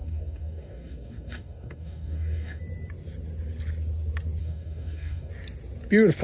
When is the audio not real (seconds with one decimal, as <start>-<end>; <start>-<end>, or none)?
0.0-2.6; 4.4-5.3